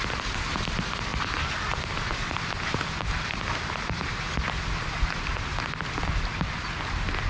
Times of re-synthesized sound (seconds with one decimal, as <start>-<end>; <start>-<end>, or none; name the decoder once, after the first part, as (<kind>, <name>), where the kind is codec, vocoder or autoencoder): none